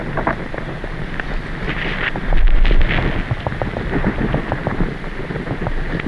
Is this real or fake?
real